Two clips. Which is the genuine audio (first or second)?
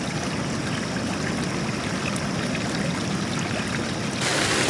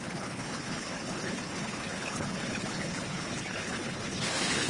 first